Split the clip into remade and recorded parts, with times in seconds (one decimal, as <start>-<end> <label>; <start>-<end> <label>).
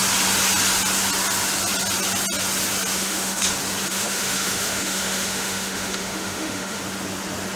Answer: 0.0-2.9 recorded; 2.9-3.5 remade; 3.5-3.9 recorded; 3.9-6.8 remade; 6.8-7.6 recorded